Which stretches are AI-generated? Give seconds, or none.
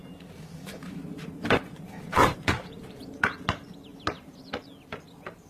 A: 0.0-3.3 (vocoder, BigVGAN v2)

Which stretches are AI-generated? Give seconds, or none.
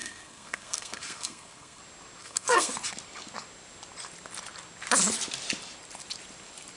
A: 0.0-1.8 (codec, SNAC); 2.2-2.7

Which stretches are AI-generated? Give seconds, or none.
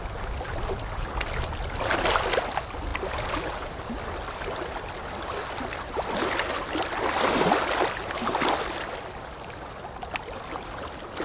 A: none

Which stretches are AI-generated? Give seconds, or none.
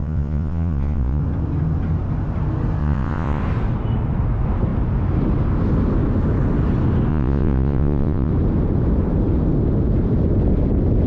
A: 0.0-1.2 (vocoder, Vocos); 2.8-3.4; 7.1-8.3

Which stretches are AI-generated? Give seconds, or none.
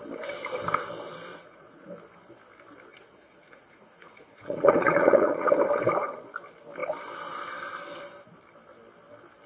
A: 1.3-1.9 (vocoder, Vocos); 2.9-5.5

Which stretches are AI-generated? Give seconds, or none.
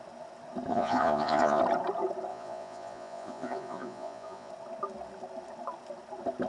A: 0.7-1.6 (vocoder, Vocos); 2.3-4.5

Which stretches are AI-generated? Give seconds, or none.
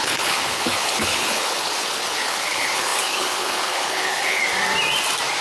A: 0.0-4.4 (codec, HILCodec)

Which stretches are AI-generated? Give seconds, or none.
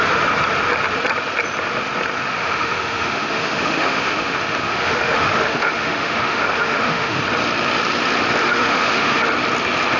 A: 2.4-7.2 (autoencoder, DAC-VAE); 8.4-9.2